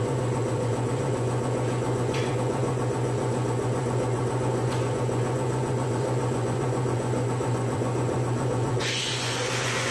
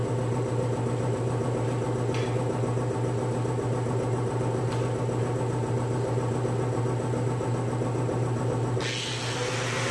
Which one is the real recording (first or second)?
second